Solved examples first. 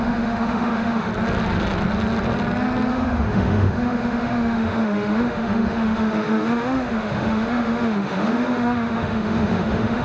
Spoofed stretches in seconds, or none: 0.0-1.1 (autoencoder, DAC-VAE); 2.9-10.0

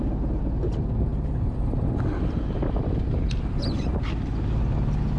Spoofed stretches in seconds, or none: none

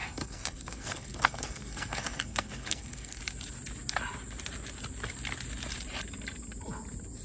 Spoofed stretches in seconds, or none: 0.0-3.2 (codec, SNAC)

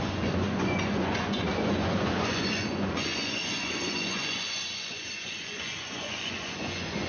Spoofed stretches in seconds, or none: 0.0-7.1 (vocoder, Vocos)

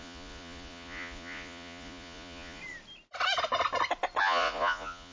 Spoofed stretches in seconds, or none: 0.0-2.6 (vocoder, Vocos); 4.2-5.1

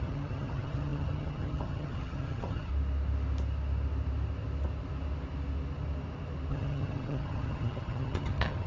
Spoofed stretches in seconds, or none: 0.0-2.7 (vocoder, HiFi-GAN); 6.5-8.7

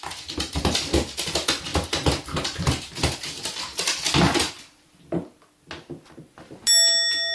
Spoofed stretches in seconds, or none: none